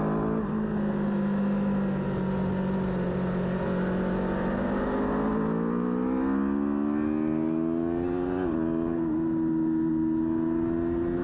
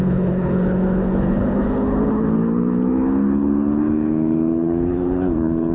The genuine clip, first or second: first